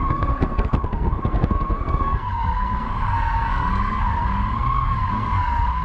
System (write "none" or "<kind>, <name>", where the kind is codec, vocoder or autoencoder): codec, SNAC